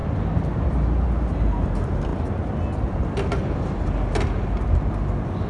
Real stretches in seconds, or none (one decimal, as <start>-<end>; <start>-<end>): 0.0-5.5